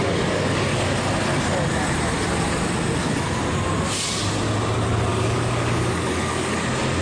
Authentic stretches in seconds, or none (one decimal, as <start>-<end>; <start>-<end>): 1.0-5.1; 6.6-7.0

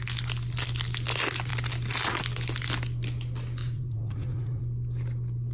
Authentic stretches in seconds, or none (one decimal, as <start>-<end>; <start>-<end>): 0.0-3.6; 4.6-5.5

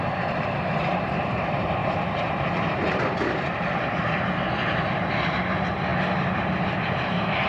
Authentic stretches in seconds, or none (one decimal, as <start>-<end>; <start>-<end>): 1.8-5.1

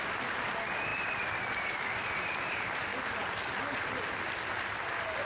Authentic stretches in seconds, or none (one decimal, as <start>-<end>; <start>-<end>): 0.0-0.9; 1.9-5.2

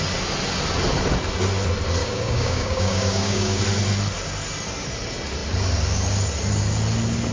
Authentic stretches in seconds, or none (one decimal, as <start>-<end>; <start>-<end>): 0.0-2.0; 3.6-7.3

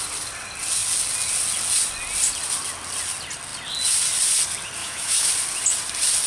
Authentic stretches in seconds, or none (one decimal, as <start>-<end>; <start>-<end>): 0.0-4.8; 5.3-6.3

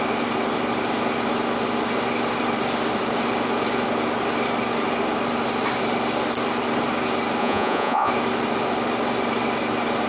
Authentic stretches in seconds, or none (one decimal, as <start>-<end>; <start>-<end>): 0.0-7.4; 8.1-10.1

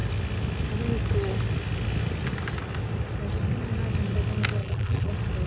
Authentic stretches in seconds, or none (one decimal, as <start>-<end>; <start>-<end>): 0.0-4.6; 5.1-5.5